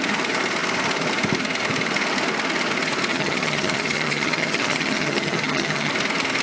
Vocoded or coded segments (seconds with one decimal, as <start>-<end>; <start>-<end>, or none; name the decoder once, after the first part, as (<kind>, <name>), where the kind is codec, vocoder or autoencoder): 3.1-5.9 (vocoder, HiFi-GAN)